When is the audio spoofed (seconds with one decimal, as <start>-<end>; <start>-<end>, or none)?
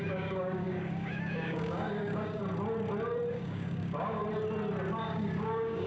0.0-2.4; 3.3-4.2; 4.9-5.9